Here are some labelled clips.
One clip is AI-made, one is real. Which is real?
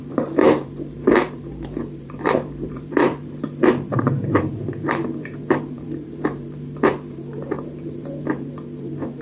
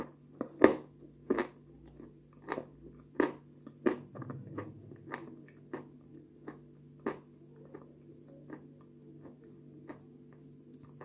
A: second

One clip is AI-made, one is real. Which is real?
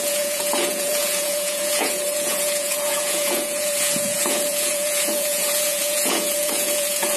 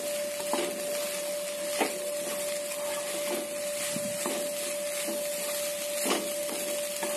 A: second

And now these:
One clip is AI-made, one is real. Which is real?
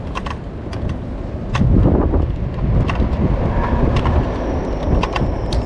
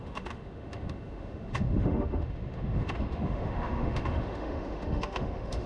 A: first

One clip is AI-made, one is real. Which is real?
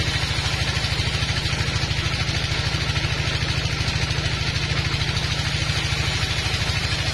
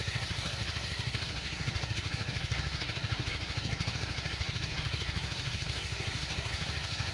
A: first